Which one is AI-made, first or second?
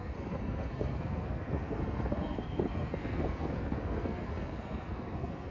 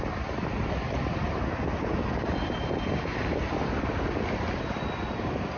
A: first